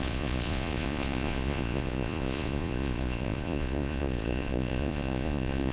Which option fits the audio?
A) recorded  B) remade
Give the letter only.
B